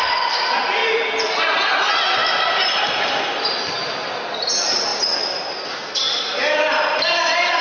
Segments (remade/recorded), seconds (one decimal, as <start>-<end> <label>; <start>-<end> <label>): 0.0-0.8 recorded; 0.8-1.4 remade; 1.4-2.2 recorded; 2.2-2.8 remade; 2.8-7.6 recorded